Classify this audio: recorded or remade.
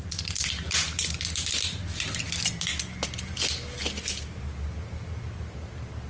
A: recorded